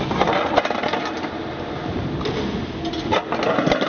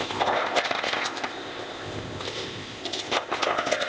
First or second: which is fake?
second